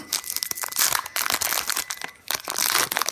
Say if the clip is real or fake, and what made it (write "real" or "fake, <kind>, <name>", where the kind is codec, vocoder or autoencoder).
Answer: real